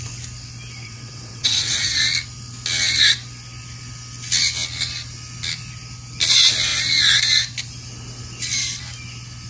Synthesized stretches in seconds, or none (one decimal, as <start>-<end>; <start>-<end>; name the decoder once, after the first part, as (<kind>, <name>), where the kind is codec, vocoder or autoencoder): 0.8-2.0 (vocoder, WaveNeXt)